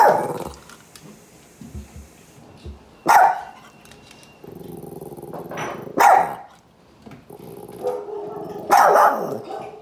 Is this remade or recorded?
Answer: recorded